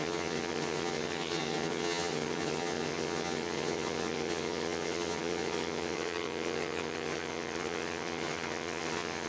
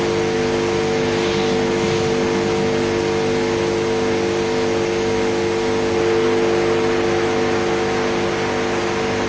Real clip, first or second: second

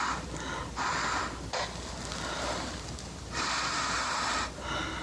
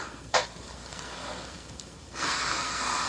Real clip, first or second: first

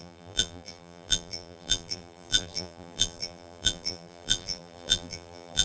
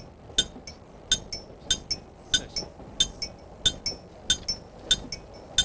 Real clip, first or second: second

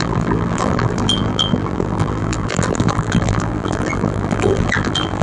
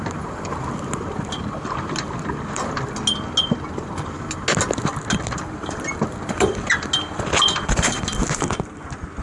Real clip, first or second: second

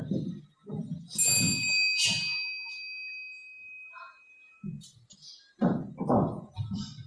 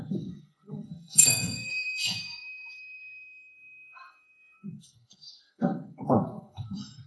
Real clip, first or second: first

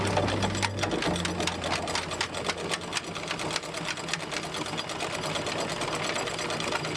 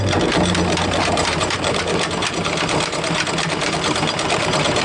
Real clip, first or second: first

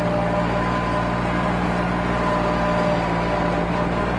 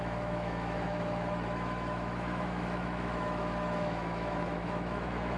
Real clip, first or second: first